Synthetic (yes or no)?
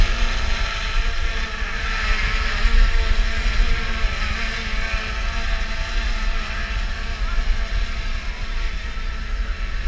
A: no